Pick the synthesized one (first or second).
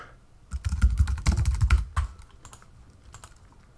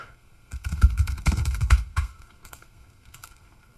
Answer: second